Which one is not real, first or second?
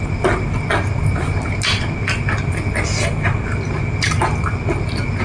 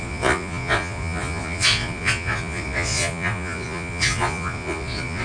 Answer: second